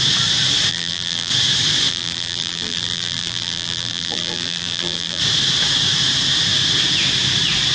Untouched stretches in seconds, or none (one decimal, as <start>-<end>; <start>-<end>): 0.0-0.7; 1.3-1.9; 5.2-7.7